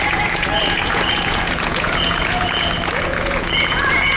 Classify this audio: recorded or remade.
remade